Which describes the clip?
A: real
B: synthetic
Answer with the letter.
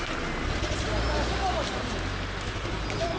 A